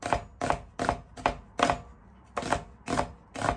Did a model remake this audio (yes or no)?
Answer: no